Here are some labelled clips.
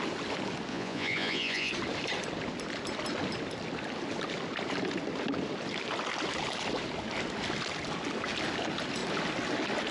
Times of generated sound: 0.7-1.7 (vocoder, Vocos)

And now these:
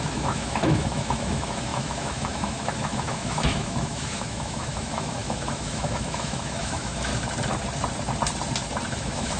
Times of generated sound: 0.0-7.1 (autoencoder, DAC-VAE); 9.0-9.4

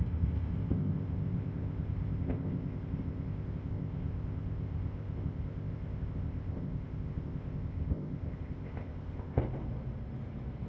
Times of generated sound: 0.0-9.4 (codec, ZipCodec)